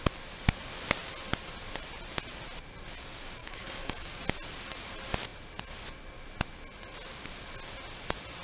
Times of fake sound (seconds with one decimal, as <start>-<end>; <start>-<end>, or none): 3.4-4.2